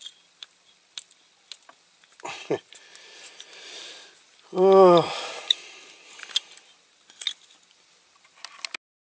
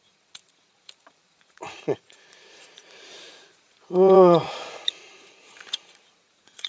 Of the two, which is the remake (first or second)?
second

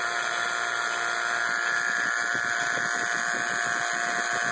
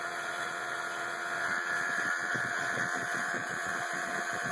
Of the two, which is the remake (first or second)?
second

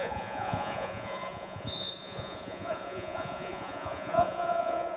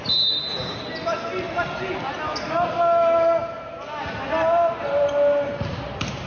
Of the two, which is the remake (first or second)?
first